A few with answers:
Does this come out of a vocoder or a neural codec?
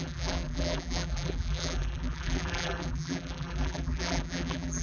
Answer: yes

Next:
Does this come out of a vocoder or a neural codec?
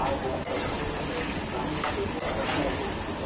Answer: no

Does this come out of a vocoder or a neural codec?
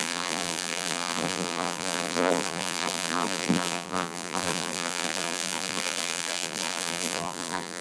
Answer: yes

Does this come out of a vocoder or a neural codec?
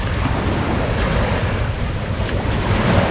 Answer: yes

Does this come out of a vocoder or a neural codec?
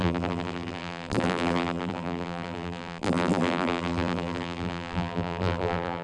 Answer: yes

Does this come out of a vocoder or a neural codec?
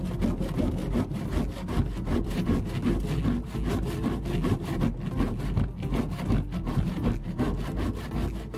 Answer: no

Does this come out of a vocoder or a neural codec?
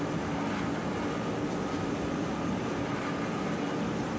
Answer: no